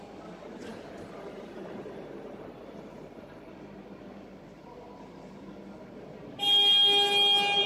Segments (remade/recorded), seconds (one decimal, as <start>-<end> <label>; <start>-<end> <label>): 0.0-0.7 recorded; 0.7-3.5 remade; 3.5-7.7 recorded